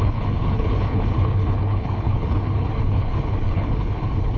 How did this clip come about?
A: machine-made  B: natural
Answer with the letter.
A